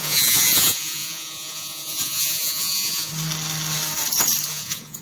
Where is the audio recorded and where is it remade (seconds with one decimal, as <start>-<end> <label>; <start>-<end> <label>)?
0.0-3.1 remade; 3.1-4.5 recorded; 4.5-5.0 remade